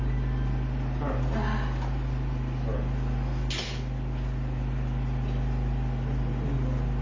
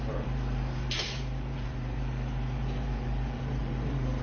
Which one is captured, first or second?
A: first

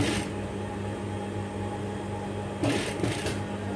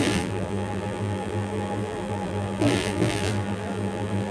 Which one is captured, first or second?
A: first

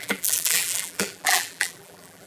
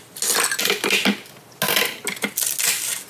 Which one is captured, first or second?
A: second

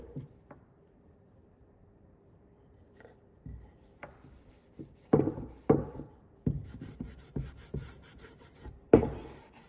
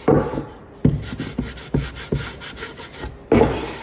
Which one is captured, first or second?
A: second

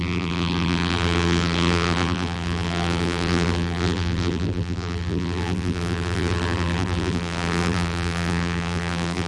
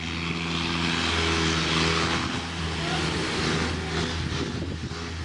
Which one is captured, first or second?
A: second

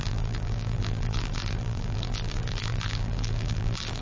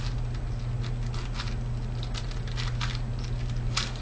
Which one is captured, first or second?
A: second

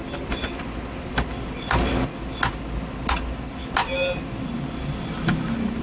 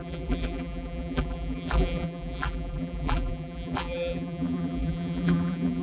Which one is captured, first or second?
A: first